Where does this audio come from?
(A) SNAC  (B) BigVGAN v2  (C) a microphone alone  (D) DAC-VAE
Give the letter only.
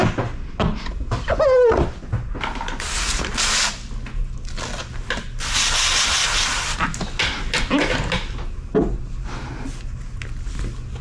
C